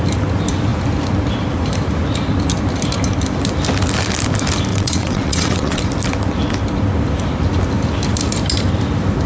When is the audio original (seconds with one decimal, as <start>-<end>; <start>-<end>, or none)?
0.0-4.7; 5.8-9.3